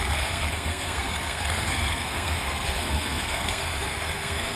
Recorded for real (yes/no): no